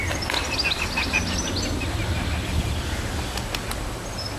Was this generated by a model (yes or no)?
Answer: no